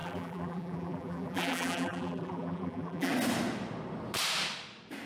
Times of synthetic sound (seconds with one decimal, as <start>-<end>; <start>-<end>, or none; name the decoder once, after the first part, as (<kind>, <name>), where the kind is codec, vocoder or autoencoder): 0.0-3.1 (vocoder, BigVGAN v2)